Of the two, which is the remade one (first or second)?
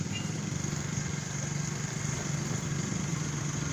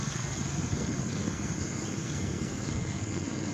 second